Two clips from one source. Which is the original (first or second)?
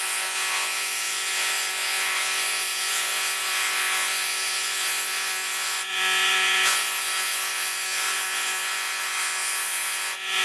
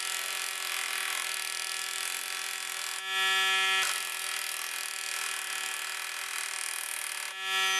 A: second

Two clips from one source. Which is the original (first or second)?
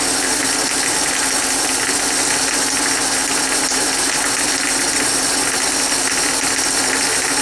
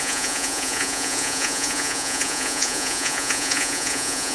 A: first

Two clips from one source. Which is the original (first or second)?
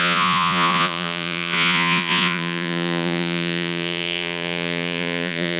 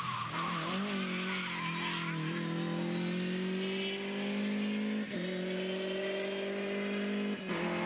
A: second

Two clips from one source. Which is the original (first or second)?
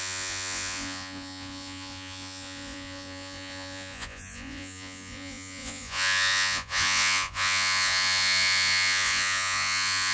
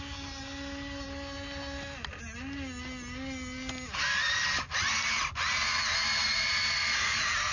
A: second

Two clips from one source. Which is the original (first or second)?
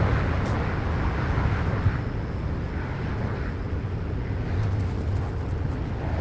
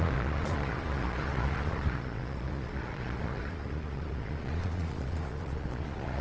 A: first